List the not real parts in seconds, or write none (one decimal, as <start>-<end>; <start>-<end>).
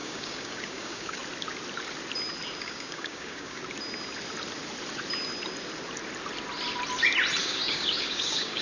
0.0-1.2; 2.6-3.6; 7.4-8.6